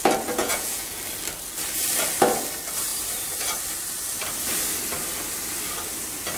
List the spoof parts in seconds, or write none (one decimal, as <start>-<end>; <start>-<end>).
0.4-1.0

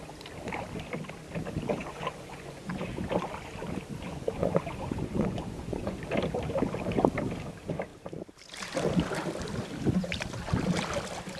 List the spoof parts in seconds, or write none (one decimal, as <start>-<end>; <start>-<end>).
1.8-2.7; 4.1-6.0